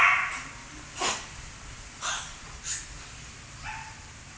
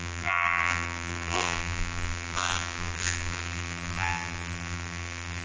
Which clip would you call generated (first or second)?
second